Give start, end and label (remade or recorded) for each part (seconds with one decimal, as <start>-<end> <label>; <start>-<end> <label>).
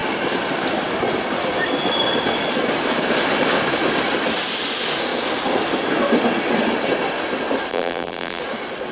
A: 0.0-7.7 recorded; 7.7-8.4 remade; 8.4-8.9 recorded